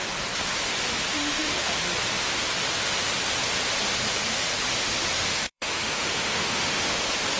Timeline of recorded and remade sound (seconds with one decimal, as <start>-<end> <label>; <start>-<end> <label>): 0.0-1.1 recorded; 1.1-1.8 remade; 1.8-5.2 recorded; 5.2-7.0 remade; 7.0-7.4 recorded